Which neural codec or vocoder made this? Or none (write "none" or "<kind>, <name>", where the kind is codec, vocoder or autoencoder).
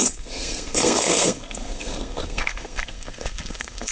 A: codec, SNAC